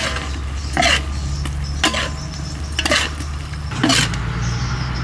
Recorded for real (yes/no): yes